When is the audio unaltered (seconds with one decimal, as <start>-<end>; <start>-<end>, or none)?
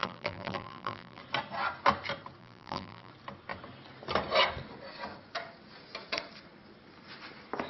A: 1.2-2.4; 3.1-7.7